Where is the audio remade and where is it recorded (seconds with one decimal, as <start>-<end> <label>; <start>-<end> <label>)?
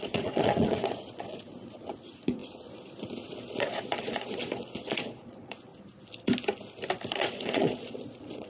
0.0-5.7 remade; 5.7-7.1 recorded; 7.1-8.5 remade